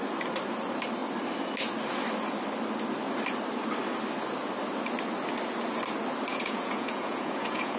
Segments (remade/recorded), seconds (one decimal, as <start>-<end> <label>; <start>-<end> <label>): 0.0-6.3 recorded; 6.3-7.8 remade